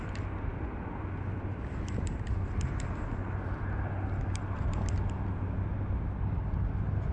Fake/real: real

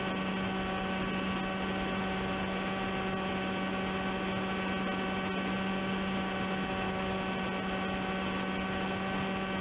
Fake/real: real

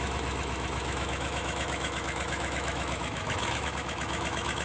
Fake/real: fake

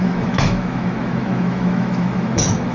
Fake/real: fake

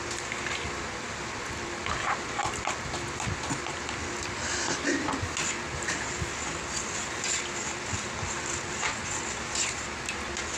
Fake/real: real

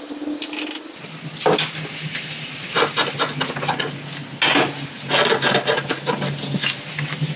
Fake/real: real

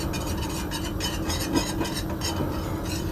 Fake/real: real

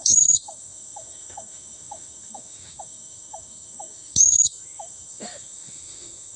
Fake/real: fake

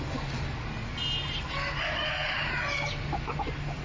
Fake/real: real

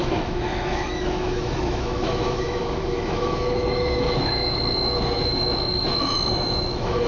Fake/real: fake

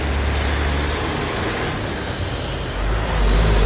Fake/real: real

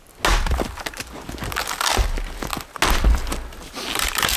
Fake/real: real